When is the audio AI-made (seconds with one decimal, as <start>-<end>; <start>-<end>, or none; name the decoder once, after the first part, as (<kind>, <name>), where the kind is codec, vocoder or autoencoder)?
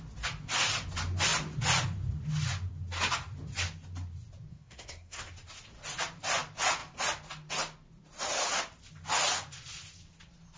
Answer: 4.5-5.3 (codec, SNAC)